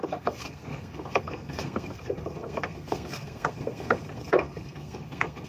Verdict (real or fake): fake